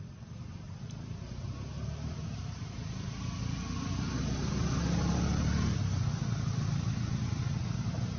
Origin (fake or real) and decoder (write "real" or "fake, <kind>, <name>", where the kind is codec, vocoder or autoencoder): real